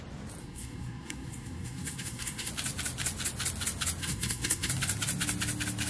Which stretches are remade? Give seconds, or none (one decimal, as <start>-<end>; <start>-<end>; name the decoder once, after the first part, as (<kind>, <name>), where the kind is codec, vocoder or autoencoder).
0.4-2.5 (codec, SNAC); 4.0-4.7